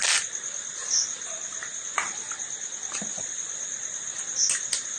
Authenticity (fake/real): real